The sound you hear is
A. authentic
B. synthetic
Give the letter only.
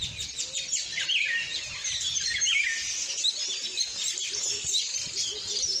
A